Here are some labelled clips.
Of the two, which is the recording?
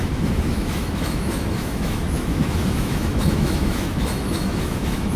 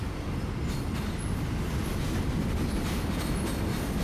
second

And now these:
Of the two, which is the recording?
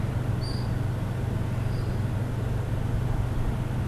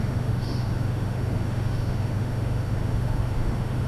first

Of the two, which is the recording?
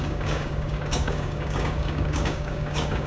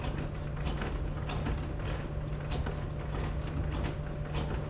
second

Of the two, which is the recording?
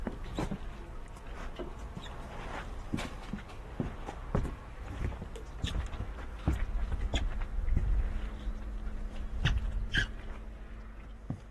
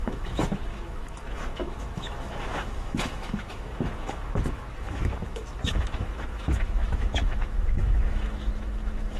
first